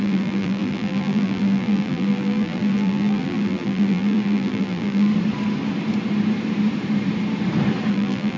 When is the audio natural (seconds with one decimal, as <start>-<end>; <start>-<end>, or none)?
5.1-7.9